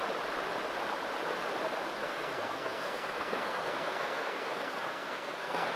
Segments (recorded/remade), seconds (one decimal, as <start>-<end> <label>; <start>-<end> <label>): 0.0-2.0 recorded; 2.0-5.8 remade